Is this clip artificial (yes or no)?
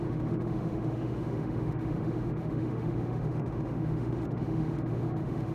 yes